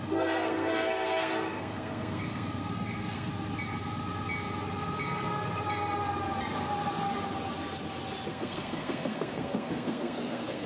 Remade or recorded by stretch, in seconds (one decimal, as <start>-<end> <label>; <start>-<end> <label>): 0.0-3.3 remade; 3.3-8.3 recorded; 8.3-10.7 remade